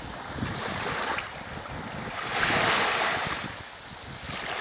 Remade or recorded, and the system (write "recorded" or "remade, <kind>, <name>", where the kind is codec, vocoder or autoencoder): recorded